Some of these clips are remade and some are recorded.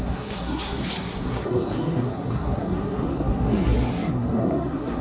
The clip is remade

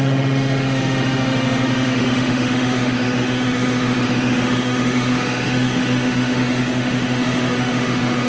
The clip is remade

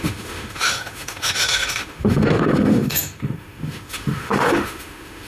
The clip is remade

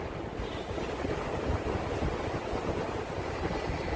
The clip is recorded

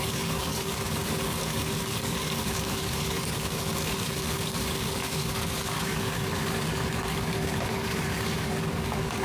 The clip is remade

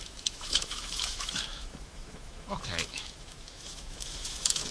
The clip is remade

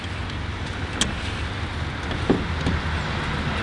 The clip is recorded